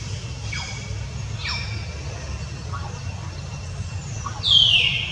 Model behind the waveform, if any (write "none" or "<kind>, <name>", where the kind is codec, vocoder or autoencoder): vocoder, BigVGAN v2